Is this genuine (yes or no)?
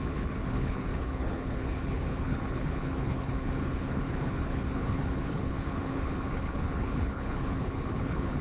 no